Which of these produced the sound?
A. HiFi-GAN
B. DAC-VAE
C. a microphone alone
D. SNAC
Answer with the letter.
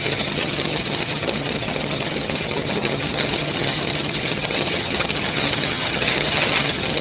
A